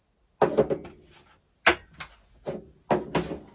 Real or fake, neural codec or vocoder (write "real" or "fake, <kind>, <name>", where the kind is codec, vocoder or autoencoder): real